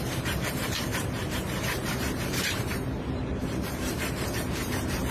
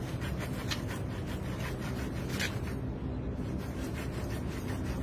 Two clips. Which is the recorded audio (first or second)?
second